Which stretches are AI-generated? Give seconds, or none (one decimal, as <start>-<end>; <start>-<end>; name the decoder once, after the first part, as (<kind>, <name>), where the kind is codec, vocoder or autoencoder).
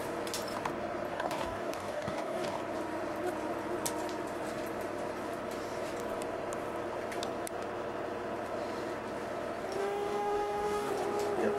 1.1-2.6 (codec, DAC); 9.8-10.9